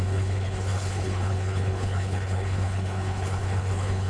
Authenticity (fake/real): fake